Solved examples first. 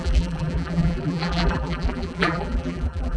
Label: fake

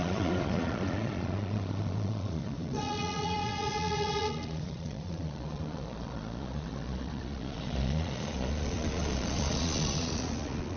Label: fake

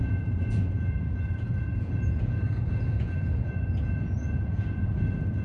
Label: fake